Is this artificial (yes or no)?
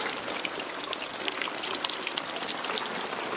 no